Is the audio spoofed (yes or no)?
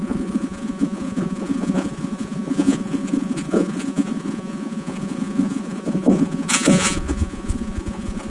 yes